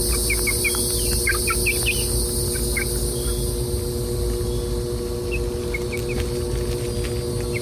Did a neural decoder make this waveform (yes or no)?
no